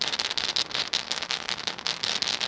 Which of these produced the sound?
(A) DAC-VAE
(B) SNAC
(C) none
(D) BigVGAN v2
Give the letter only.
A